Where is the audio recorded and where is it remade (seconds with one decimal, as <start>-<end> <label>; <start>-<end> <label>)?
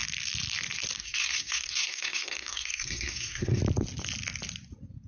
0.0-1.0 recorded; 1.0-3.6 remade; 3.6-5.1 recorded